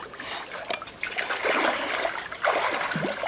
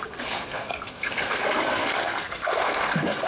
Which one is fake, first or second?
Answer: second